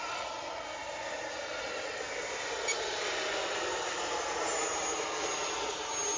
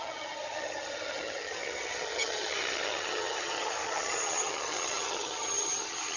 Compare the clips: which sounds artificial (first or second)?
second